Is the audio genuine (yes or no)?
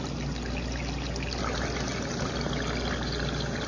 yes